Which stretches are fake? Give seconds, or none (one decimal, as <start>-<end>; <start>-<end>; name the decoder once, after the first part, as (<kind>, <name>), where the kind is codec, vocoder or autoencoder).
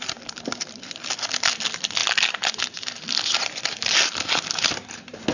none